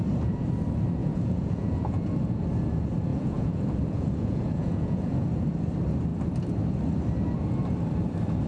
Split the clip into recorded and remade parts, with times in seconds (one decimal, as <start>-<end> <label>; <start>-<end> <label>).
0.0-1.0 recorded; 1.0-2.1 remade; 2.1-3.1 recorded; 3.1-5.3 remade; 5.3-8.5 recorded